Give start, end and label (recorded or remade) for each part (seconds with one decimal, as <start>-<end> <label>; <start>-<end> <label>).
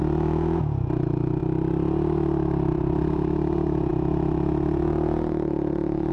0.0-1.4 remade; 1.4-2.7 recorded; 2.7-6.1 remade